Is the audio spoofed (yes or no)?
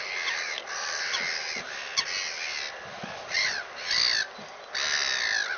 no